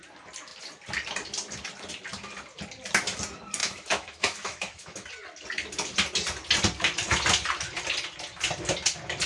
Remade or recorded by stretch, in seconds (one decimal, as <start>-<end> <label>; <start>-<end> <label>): 0.0-3.6 recorded; 3.6-5.1 remade; 5.1-9.3 recorded

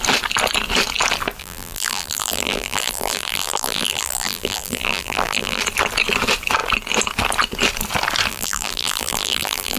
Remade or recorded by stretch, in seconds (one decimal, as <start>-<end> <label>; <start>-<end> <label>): 0.0-1.4 recorded; 1.4-5.6 remade; 5.6-8.3 recorded; 8.3-9.8 remade

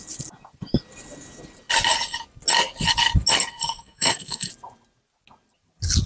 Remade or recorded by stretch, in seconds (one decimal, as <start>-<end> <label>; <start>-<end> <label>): 0.0-3.5 recorded; 3.5-4.5 remade; 4.5-6.1 recorded

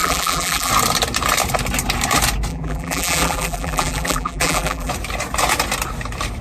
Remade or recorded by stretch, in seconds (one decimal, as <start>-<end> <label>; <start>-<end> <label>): 0.0-0.7 remade; 0.7-2.5 recorded; 2.5-4.9 remade; 4.9-6.4 recorded

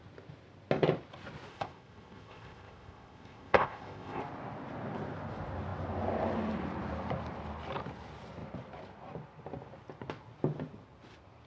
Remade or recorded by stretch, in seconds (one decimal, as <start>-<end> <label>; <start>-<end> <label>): 0.0-1.5 recorded; 1.5-4.2 remade; 4.2-11.5 recorded

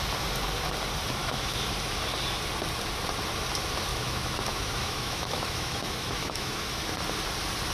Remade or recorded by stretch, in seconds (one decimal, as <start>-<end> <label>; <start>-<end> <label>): 0.0-1.2 recorded; 1.2-1.7 remade; 1.7-3.9 recorded; 3.9-6.8 remade; 6.8-7.7 recorded